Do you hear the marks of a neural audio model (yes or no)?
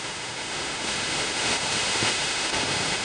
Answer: yes